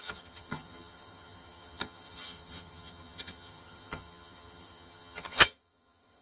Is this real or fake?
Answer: fake